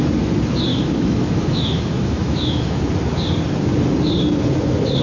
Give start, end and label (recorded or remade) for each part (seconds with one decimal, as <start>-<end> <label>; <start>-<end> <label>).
0.0-0.7 recorded; 0.7-2.8 remade; 2.8-5.0 recorded